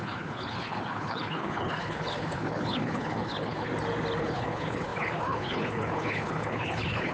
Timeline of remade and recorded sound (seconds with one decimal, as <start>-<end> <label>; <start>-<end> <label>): 0.0-3.7 remade; 3.7-4.2 recorded; 4.2-7.1 remade